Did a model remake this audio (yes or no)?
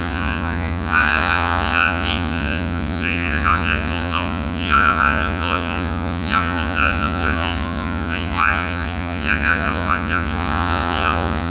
yes